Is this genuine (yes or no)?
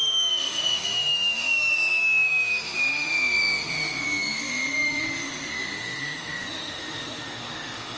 no